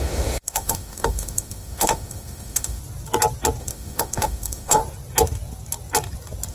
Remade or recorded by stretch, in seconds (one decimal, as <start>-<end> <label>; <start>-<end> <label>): 0.0-2.8 remade; 2.8-3.6 recorded; 3.6-4.8 remade; 4.8-6.5 recorded